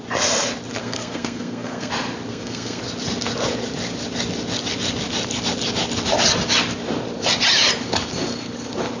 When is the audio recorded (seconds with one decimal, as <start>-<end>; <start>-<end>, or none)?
0.0-0.8; 1.9-2.3; 2.8-9.0